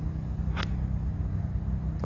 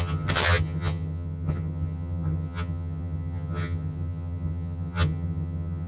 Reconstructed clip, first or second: second